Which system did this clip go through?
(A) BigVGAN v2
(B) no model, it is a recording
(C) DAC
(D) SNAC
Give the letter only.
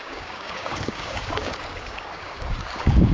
C